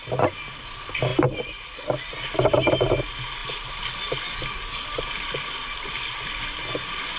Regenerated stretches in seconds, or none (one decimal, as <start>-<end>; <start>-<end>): none